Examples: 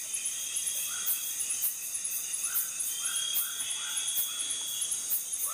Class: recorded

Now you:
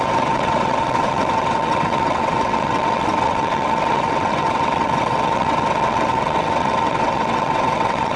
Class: remade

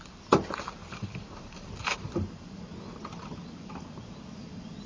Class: recorded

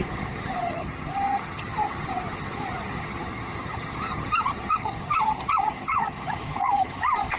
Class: remade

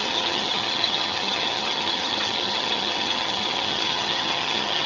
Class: remade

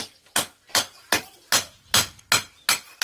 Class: recorded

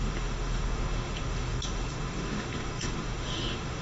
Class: remade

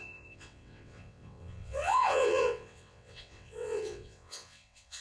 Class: remade